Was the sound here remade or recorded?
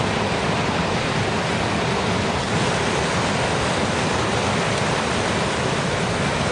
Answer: recorded